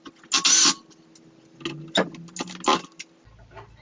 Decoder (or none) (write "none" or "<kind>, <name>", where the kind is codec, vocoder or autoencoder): none